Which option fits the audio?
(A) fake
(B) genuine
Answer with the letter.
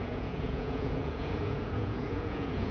A